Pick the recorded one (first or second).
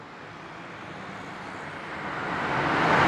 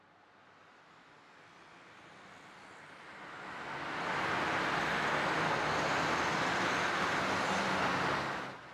second